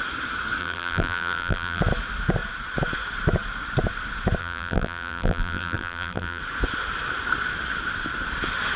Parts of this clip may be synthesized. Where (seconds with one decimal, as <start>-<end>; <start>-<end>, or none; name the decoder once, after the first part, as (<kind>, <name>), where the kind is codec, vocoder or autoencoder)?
0.6-1.8 (vocoder, BigVGAN v2); 4.4-6.4